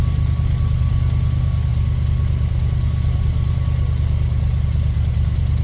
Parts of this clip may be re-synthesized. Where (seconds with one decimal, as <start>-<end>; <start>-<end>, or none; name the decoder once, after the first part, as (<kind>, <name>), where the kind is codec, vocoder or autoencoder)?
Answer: none